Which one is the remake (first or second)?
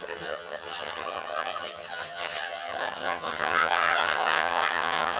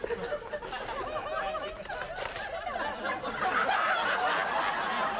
first